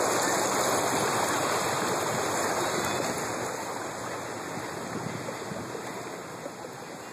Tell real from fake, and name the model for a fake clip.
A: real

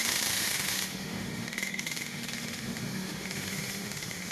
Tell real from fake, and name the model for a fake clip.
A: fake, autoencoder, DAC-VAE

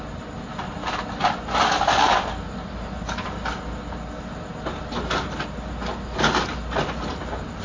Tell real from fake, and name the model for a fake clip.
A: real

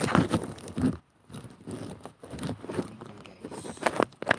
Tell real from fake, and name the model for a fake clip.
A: real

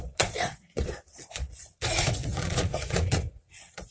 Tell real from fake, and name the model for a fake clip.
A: fake, vocoder, Vocos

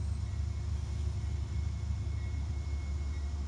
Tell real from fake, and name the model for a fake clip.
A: real